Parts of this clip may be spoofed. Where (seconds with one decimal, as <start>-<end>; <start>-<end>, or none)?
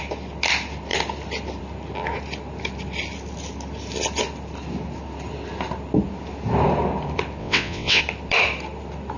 7.4-8.0